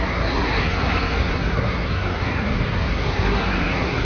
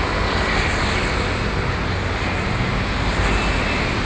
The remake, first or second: first